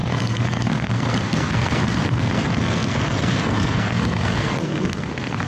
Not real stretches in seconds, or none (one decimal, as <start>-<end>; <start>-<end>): 0.0-5.5